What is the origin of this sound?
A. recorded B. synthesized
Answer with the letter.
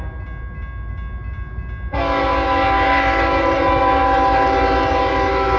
A